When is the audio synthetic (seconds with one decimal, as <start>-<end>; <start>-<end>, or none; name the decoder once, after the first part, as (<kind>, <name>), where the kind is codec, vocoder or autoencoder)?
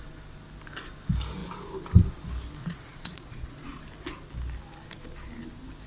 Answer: 2.6-3.8 (vocoder, Vocos)